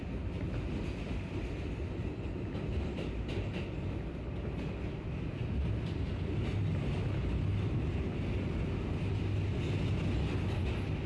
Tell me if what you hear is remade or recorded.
recorded